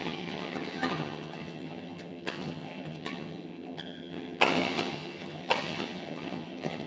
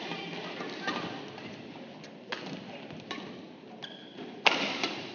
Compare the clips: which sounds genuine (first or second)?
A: second